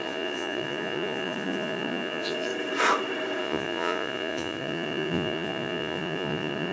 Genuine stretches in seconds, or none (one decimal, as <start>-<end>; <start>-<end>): 2.5-3.4